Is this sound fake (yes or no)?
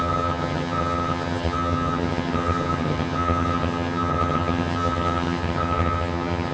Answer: yes